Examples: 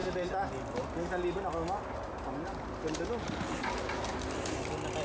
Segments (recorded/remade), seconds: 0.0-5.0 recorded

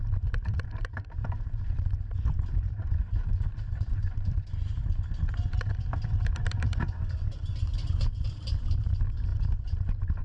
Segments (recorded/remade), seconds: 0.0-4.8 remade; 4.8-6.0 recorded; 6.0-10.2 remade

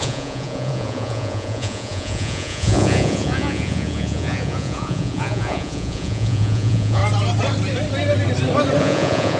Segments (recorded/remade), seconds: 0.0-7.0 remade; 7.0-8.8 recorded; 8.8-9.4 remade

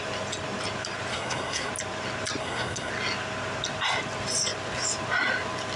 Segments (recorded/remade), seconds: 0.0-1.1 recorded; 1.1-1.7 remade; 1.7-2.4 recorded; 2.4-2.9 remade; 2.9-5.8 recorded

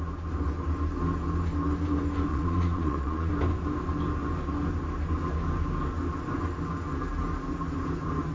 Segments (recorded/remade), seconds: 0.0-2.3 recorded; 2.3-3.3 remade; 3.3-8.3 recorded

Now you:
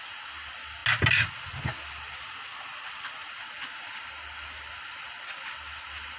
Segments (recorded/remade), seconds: 0.0-6.2 recorded